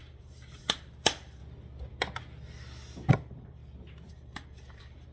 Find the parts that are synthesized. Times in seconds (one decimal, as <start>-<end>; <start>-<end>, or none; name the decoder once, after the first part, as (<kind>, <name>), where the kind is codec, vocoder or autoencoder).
0.0-1.4 (vocoder, BigVGAN v2); 3.1-3.6; 4.1-5.1